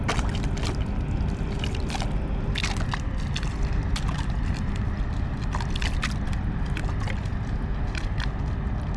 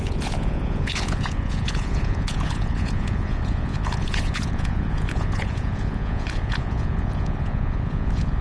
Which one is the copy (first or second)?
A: second